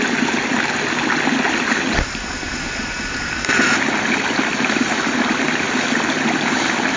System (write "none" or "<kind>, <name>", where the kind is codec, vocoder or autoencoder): none